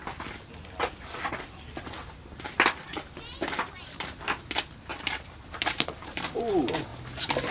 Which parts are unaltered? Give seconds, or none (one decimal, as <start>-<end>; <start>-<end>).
0.0-4.9; 6.5-7.5